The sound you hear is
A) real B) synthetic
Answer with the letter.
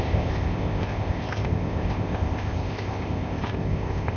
B